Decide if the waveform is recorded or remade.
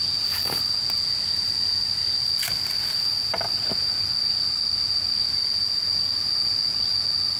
recorded